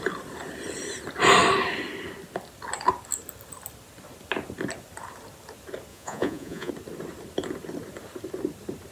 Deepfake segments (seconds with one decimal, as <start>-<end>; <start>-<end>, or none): 5.9-6.7